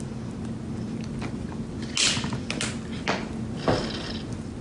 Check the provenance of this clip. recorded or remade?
recorded